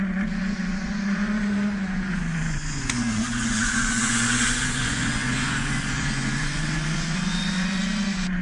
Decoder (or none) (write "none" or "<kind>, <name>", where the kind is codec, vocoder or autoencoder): vocoder, Vocos